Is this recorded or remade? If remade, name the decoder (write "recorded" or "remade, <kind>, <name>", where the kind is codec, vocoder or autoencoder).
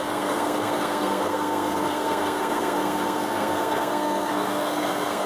remade, codec, SNAC